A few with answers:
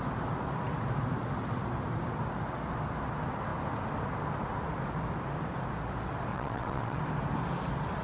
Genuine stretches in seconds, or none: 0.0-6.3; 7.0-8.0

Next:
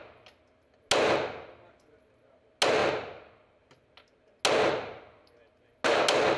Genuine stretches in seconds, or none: 0.0-6.4

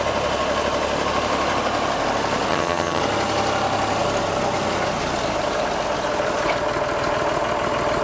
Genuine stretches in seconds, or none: 0.0-2.5; 3.0-8.0

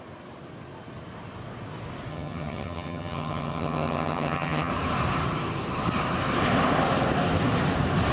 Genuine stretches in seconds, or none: 0.0-2.1; 4.7-8.1

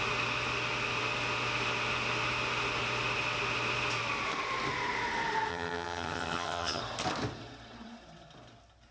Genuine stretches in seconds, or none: 0.0-5.5; 6.8-8.9

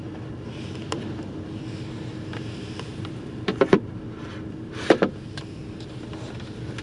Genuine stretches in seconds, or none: 0.0-2.9; 3.9-4.3

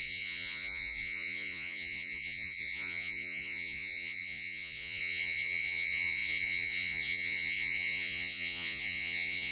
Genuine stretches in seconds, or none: none

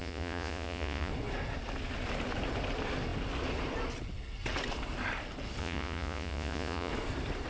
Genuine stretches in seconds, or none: 1.1-5.6; 6.9-7.5